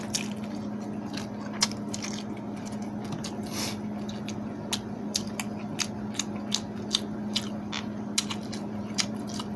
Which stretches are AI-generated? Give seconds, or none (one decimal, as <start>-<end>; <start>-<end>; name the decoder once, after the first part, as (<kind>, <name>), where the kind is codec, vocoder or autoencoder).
8.4-9.2 (vocoder, BigVGAN v2)